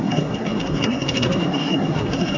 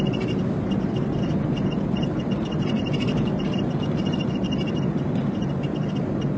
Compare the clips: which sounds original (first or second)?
second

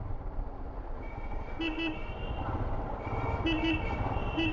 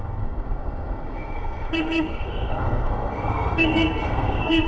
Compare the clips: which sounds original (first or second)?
first